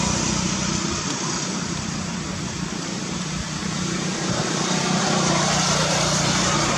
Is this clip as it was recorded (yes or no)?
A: no